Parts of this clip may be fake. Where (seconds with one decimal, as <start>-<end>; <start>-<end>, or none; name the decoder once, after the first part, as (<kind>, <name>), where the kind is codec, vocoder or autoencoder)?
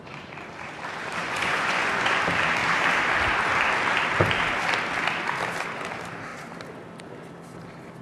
1.2-2.2 (vocoder, Vocos)